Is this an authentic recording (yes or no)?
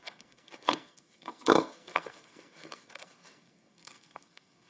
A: no